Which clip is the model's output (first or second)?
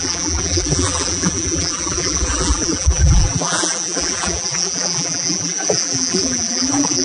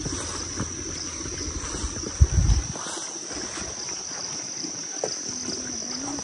first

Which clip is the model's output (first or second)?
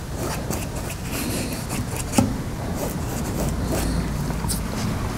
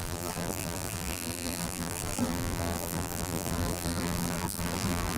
second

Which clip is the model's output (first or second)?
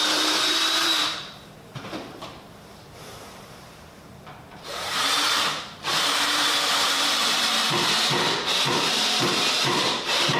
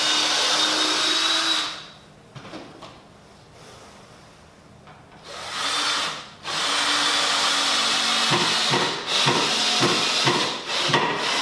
first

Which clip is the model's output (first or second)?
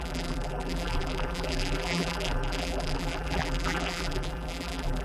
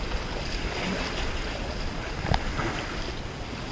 first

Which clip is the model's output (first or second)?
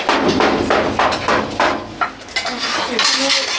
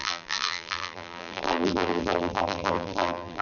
second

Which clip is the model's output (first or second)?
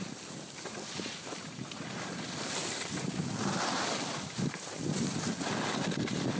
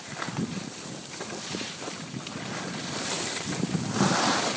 second